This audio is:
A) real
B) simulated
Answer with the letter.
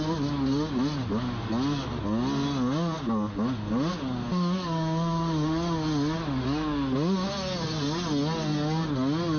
A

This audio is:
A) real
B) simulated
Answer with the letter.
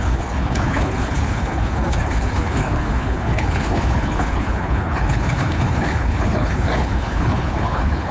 B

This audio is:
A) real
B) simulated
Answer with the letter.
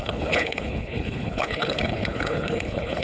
B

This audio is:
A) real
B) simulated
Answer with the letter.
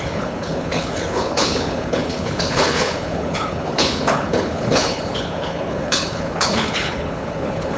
B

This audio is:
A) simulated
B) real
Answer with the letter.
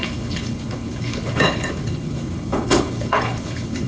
A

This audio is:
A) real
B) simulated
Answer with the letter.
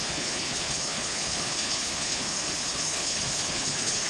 B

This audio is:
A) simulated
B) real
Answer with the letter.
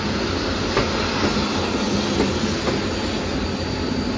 B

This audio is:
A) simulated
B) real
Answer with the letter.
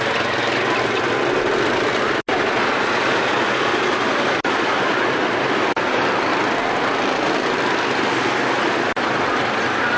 B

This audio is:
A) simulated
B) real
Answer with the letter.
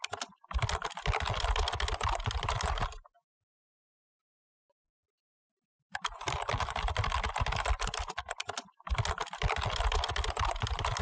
B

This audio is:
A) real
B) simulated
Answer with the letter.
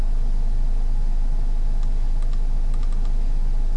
A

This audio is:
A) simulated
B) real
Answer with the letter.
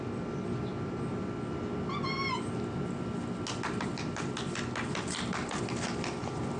B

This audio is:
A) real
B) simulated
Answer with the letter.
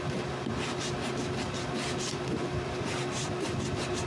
A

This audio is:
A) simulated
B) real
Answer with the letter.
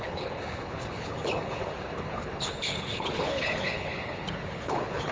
A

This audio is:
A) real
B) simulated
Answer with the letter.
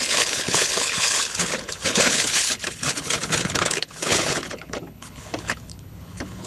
B